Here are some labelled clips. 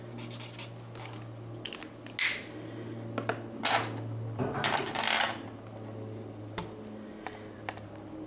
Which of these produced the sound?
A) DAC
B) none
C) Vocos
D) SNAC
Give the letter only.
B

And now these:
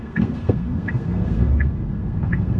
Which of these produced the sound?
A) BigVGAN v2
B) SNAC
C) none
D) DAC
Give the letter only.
B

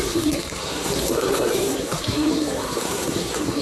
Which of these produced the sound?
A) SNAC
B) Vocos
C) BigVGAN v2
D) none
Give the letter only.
A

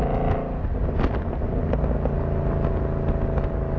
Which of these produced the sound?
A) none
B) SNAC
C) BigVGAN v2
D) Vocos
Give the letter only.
A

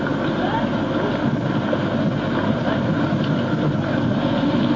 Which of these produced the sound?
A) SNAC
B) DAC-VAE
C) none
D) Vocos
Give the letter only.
C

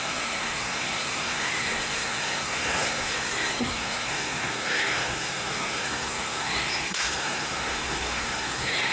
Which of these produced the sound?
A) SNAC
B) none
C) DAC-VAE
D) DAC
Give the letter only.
A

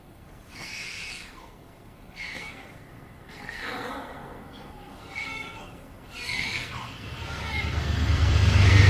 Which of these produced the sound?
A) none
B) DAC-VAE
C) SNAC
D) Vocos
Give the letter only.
C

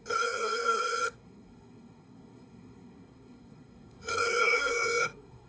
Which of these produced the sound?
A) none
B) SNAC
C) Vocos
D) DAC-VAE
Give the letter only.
B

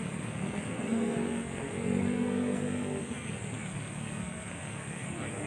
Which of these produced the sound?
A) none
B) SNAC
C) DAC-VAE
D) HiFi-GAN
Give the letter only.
B